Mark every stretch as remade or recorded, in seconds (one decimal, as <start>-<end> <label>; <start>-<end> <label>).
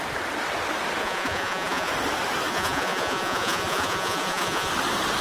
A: 0.0-1.0 recorded; 1.0-1.9 remade; 1.9-2.5 recorded; 2.5-4.7 remade; 4.7-5.2 recorded